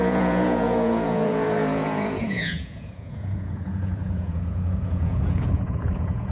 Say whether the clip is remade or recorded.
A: remade